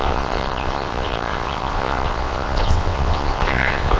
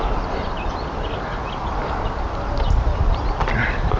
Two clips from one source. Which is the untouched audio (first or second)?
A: second